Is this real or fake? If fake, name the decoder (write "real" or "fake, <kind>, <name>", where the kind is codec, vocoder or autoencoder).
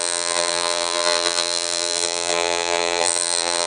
fake, vocoder, BigVGAN v2